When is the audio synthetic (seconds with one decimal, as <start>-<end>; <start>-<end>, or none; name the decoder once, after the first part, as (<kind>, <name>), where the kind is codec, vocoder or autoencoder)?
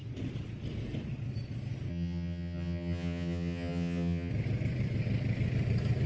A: 1.9-4.3 (vocoder, HiFi-GAN)